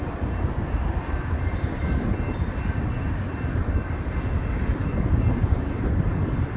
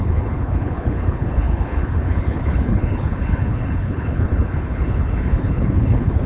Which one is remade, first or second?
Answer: second